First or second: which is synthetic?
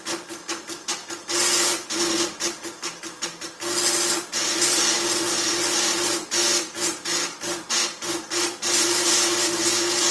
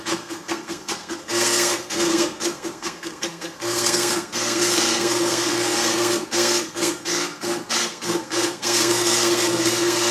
second